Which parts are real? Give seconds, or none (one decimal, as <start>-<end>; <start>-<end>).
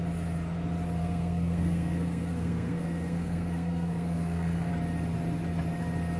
0.0-1.0; 4.7-6.2